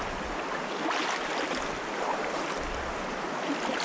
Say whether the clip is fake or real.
real